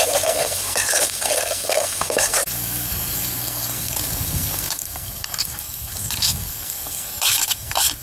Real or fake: fake